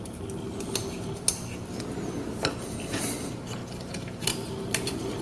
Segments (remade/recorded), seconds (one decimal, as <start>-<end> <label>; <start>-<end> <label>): 0.0-5.2 recorded